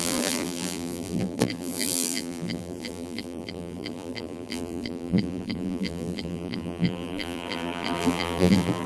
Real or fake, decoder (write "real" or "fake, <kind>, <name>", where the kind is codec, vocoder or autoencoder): fake, vocoder, BigVGAN v2